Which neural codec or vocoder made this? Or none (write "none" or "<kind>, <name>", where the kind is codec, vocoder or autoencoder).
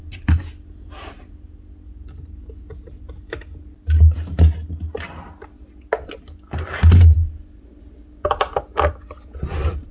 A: none